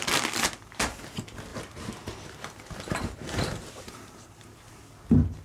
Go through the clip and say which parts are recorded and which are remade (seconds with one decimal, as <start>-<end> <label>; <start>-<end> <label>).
0.0-1.5 recorded; 1.5-4.7 remade; 4.7-5.4 recorded